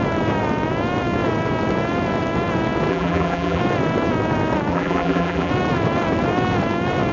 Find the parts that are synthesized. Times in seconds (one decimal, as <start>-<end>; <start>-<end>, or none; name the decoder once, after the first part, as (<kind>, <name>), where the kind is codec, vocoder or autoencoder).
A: 2.9-3.6 (vocoder, BigVGAN v2); 4.7-5.5